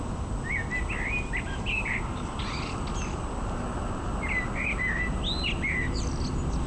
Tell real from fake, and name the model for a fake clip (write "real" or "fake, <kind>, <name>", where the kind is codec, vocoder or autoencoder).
real